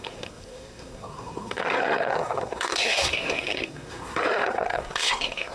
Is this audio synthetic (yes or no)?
yes